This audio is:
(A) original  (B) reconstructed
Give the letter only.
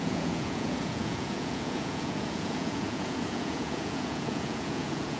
B